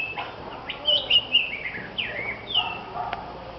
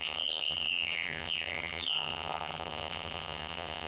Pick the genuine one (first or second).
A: first